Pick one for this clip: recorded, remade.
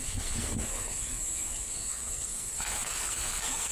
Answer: remade